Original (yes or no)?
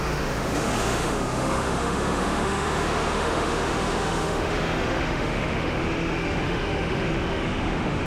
no